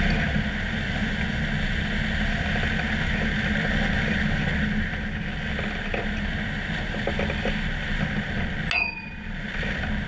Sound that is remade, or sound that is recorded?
recorded